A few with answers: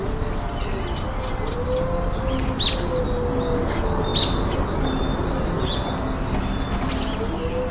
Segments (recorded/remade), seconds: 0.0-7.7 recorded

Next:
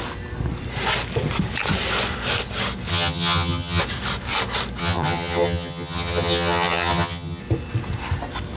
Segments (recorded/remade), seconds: 0.0-2.9 recorded; 2.9-3.8 remade; 3.8-4.8 recorded; 4.8-7.4 remade; 7.4-8.6 recorded

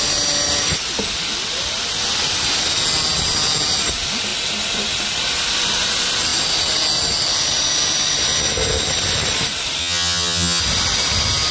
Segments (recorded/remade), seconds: 0.0-9.8 recorded; 9.8-10.6 remade; 10.6-11.5 recorded

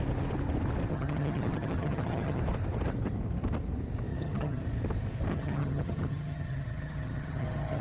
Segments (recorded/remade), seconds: 0.0-0.9 recorded; 0.9-2.4 remade; 2.4-4.1 recorded; 4.1-4.6 remade; 4.6-5.3 recorded; 5.3-7.8 remade

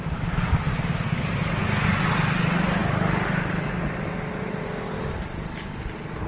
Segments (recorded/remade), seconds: 0.0-6.3 recorded

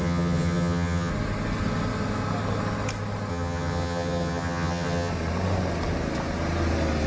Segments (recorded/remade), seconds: 0.0-1.1 remade; 1.1-3.3 recorded; 3.3-5.1 remade; 5.1-7.1 recorded